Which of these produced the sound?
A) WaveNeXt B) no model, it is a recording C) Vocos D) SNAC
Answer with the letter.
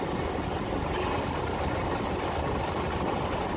B